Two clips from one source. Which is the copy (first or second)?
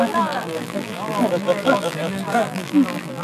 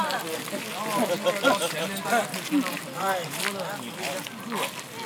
first